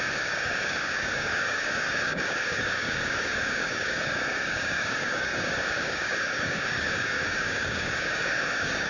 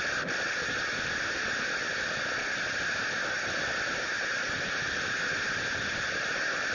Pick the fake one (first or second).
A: first